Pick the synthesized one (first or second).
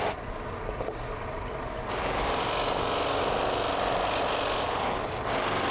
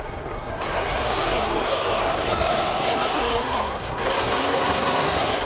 second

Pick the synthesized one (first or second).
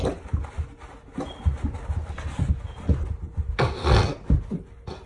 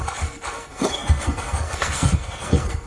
second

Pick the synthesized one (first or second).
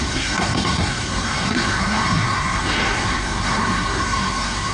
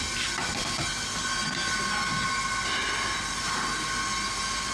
first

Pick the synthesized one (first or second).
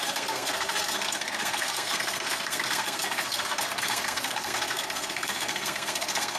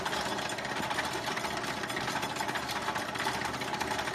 first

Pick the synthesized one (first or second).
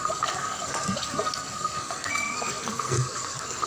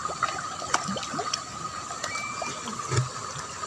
first